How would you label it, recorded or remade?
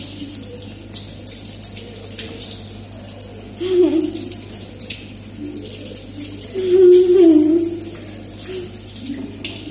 recorded